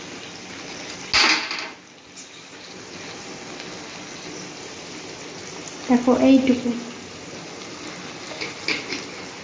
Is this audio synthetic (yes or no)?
no